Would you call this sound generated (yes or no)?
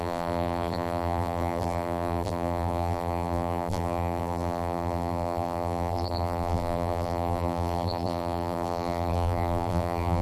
yes